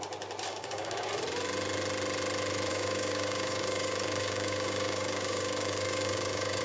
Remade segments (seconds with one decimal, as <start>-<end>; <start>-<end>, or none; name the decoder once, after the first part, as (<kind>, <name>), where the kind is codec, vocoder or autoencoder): 0.5-1.1 (codec, DAC); 2.7-6.6